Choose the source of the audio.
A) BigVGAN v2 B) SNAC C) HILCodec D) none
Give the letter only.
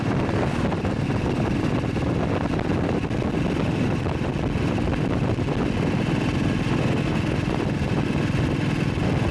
D